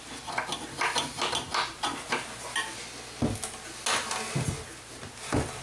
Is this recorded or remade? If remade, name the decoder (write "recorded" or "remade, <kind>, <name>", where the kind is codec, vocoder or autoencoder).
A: recorded